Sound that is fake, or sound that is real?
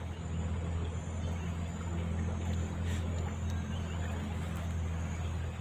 real